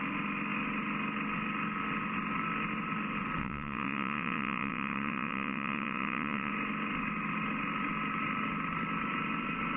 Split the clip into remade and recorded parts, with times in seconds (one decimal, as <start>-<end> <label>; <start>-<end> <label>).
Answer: 0.0-3.4 recorded; 3.4-6.5 remade; 6.5-9.8 recorded